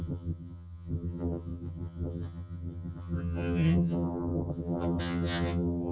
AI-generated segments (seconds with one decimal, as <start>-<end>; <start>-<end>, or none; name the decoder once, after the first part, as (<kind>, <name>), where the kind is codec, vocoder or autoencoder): 0.0-5.9 (vocoder, HiFi-GAN)